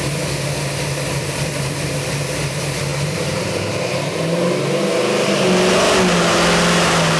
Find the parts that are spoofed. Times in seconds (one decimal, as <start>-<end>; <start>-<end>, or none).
1.2-1.9; 2.9-3.6